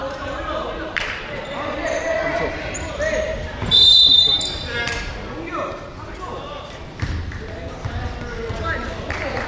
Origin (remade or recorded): remade